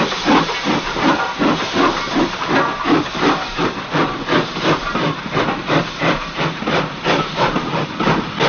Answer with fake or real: real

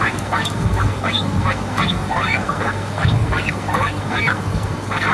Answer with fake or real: fake